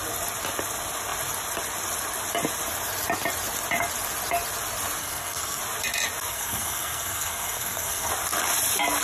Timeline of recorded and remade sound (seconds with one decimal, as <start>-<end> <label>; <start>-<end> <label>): 0.0-5.0 recorded; 5.0-5.6 remade; 5.6-6.3 recorded; 6.3-8.1 remade; 8.1-9.0 recorded